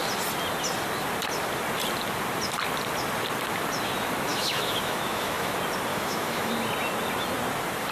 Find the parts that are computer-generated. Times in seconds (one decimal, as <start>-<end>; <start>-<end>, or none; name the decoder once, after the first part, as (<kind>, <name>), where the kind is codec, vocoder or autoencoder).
4.3-5.5 (autoencoder, DAC-VAE); 5.9-6.5